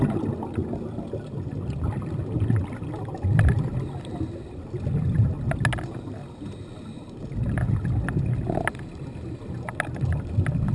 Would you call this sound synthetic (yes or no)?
no